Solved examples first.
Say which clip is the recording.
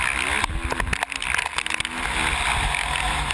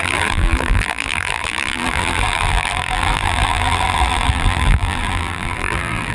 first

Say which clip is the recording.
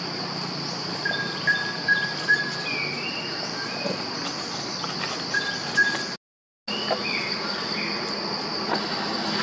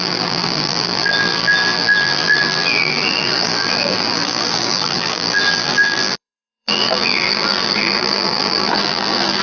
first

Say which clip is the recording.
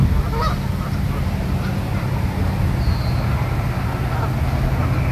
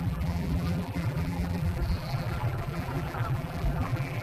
first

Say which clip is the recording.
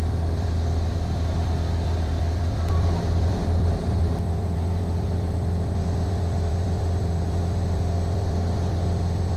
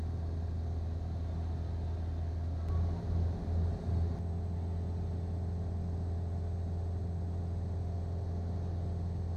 second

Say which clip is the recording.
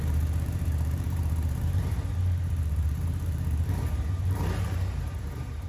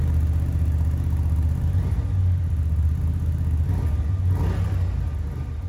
second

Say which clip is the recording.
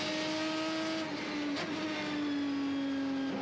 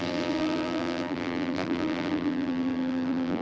first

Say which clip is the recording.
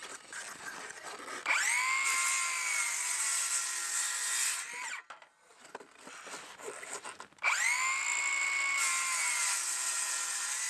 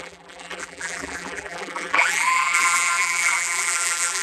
first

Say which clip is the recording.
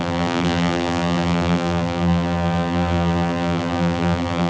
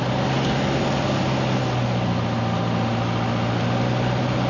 second